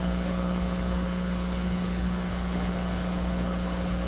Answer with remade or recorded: remade